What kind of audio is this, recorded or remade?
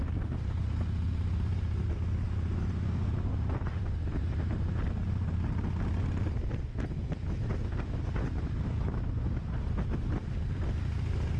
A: recorded